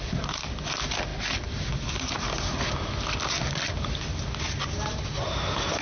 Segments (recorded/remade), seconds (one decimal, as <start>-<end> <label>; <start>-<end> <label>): 0.0-5.8 recorded